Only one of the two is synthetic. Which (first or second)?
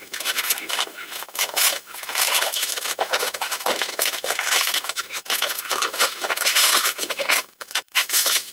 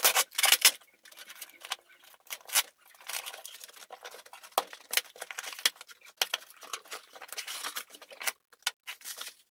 first